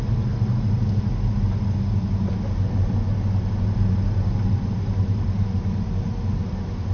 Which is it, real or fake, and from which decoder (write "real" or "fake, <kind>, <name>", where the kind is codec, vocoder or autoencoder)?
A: real